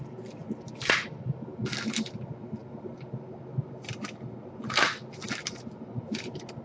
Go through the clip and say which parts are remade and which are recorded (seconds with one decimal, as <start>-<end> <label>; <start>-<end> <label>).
0.0-6.6 recorded